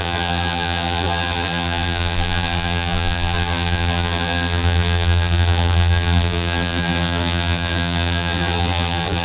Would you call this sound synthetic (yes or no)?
yes